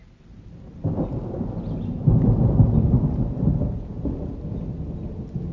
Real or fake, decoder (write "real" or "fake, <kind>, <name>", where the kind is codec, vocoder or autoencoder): real